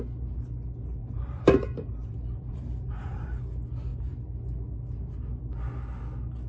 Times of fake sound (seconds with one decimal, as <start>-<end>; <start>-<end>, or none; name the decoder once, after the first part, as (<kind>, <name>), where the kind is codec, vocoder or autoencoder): 1.0-3.4 (vocoder, BigVGAN v2); 3.9-4.4